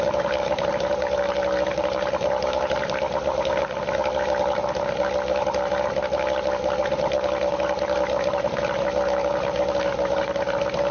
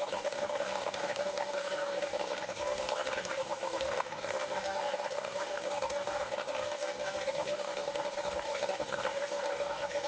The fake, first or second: second